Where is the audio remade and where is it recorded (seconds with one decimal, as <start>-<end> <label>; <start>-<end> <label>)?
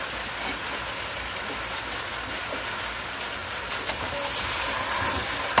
0.0-5.6 recorded